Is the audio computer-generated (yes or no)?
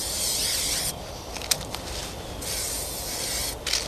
no